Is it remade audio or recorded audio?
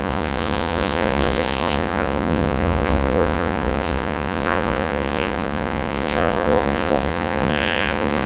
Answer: remade